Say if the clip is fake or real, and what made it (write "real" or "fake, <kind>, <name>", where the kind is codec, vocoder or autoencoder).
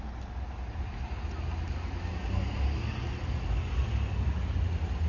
real